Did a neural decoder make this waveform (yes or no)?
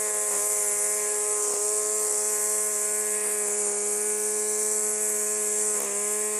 no